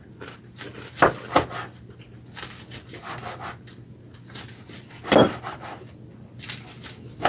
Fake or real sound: real